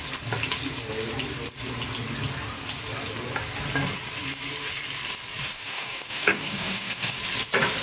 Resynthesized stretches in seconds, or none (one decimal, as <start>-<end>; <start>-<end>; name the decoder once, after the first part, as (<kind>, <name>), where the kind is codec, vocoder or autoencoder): 5.4-7.2 (codec, DAC)